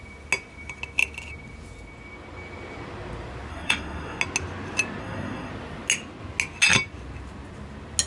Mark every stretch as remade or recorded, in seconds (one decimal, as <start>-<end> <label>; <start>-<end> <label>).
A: 0.0-3.5 recorded; 3.5-4.2 remade; 4.2-5.0 recorded; 5.0-5.5 remade; 5.5-8.1 recorded